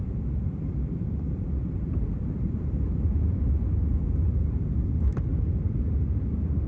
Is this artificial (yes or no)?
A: yes